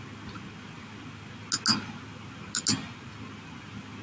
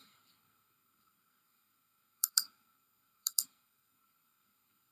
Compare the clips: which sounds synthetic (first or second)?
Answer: second